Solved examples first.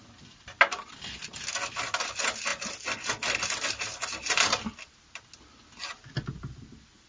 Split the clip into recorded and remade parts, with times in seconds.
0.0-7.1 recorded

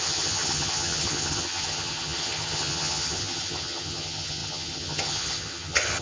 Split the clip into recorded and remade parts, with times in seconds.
0.0-6.0 remade